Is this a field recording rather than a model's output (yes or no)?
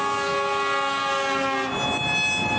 yes